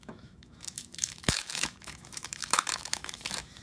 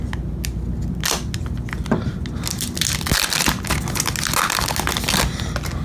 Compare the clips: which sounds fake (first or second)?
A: first